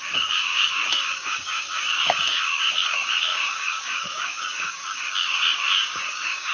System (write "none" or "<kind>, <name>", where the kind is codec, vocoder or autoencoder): codec, DAC